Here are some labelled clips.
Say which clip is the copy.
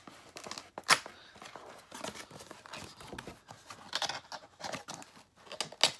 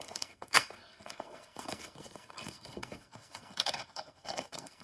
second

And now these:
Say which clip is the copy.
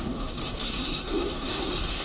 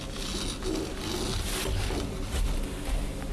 first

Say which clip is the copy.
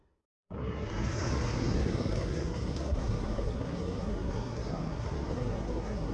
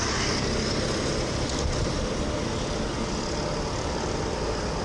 first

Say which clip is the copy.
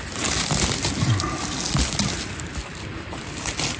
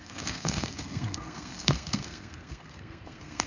second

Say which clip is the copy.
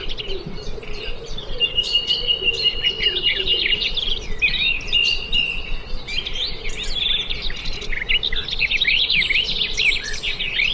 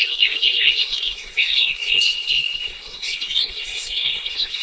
second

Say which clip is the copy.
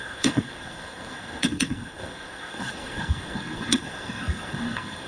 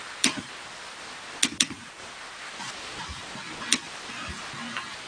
first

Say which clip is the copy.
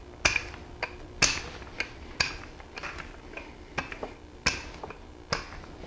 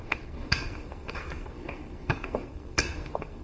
second